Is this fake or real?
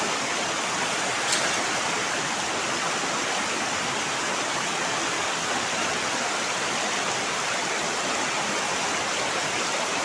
real